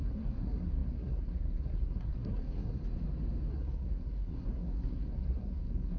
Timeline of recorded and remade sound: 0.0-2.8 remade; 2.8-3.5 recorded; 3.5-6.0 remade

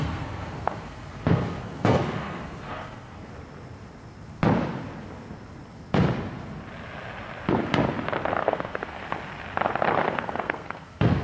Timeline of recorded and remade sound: 0.0-3.3 remade; 3.3-8.4 recorded; 8.4-9.0 remade; 9.0-10.0 recorded; 10.0-11.2 remade

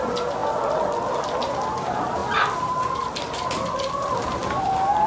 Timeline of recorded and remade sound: 0.0-5.1 recorded

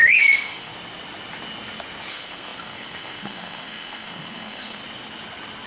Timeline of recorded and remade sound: 0.0-0.7 remade; 0.7-2.1 recorded; 2.1-4.8 remade; 4.8-5.7 recorded